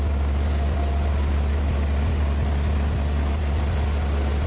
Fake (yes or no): no